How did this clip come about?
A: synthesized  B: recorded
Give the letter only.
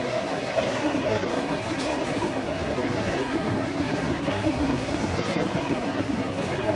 A